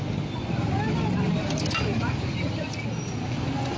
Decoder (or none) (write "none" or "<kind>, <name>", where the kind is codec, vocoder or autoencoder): none